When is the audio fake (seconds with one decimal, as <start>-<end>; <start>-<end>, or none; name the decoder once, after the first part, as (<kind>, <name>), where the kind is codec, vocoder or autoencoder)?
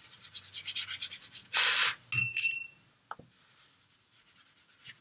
none